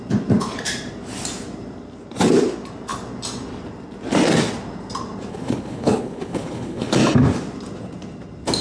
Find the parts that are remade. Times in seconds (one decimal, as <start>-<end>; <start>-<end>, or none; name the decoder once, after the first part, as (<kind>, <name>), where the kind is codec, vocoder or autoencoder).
5.3-6.9 (codec, HILCodec)